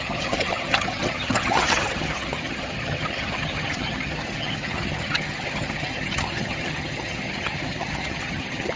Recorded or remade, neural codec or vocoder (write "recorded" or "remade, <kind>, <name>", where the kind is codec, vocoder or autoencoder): remade, vocoder, HiFi-GAN